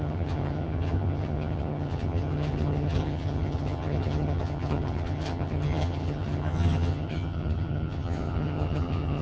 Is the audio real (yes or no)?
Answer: no